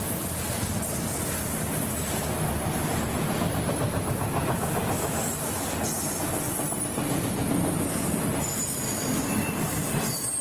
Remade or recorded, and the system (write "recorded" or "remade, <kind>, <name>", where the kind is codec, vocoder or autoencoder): recorded